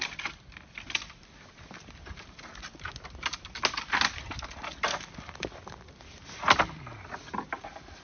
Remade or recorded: recorded